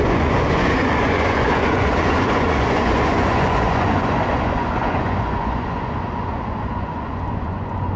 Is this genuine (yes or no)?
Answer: no